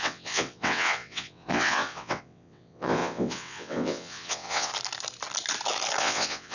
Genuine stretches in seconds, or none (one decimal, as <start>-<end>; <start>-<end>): 4.7-6.0